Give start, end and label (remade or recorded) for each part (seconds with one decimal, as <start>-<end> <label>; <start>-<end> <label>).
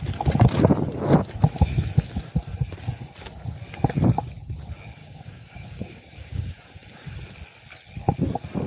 0.0-5.0 recorded; 5.0-6.4 remade; 6.4-8.7 recorded